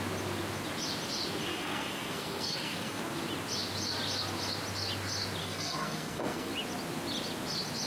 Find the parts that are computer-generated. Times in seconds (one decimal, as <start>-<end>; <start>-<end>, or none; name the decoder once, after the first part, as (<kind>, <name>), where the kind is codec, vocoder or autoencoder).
1.5-3.0 (codec, SNAC); 5.4-6.5